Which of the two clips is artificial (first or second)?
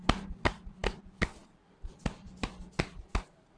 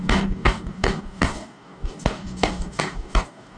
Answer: second